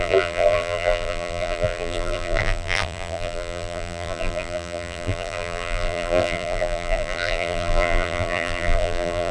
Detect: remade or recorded remade